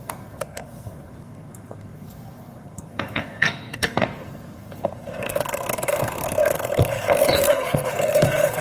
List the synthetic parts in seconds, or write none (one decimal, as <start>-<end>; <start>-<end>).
0.0-8.6